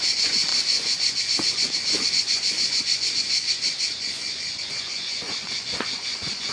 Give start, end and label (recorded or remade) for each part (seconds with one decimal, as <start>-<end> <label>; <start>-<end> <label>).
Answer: 0.0-6.5 remade